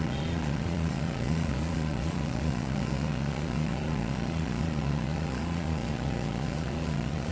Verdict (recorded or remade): remade